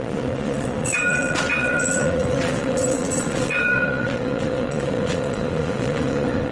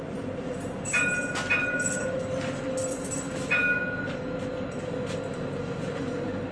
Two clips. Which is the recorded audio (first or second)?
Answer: second